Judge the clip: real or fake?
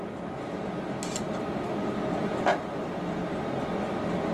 real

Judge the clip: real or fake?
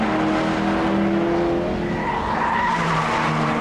real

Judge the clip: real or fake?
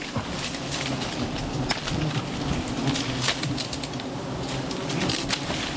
real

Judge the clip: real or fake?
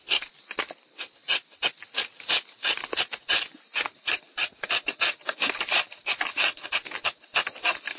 real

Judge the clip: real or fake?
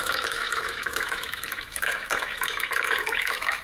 fake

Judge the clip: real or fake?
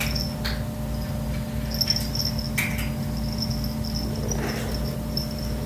real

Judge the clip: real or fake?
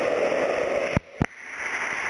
real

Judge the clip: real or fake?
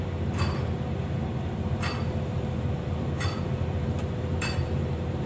fake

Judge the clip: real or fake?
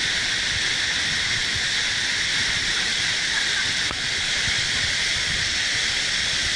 real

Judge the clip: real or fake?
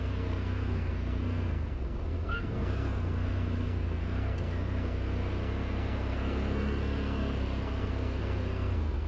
fake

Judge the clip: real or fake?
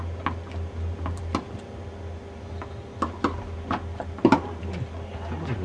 real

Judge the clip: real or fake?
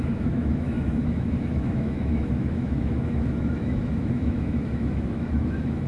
fake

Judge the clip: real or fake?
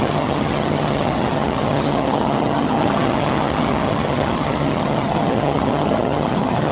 fake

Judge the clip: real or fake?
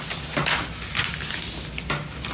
real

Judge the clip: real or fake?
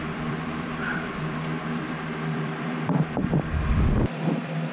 fake